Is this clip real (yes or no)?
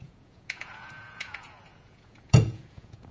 no